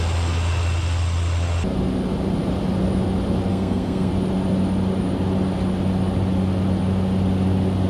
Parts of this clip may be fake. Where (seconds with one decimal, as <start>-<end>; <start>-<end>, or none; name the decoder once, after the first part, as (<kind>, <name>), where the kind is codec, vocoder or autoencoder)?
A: 3.5-4.1 (codec, SNAC)